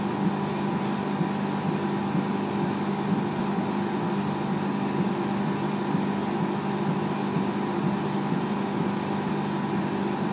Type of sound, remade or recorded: recorded